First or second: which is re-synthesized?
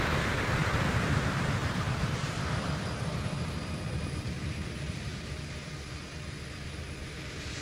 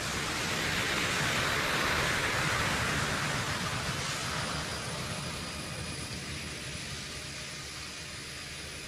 first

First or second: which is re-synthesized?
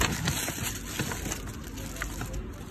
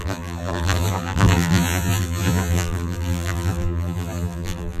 second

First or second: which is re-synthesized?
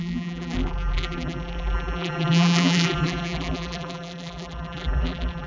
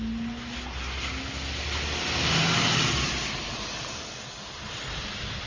first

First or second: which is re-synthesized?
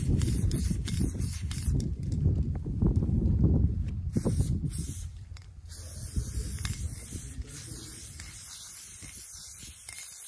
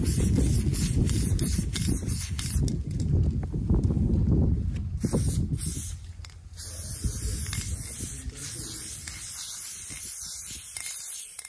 first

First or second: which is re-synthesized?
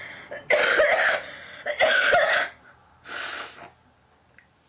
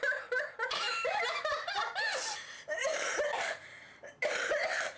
second